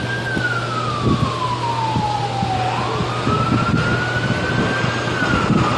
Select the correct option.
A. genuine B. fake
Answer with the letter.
A